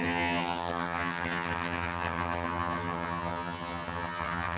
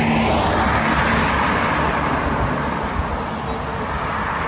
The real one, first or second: second